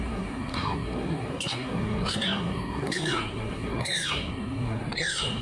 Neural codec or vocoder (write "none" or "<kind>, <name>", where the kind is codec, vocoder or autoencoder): codec, SNAC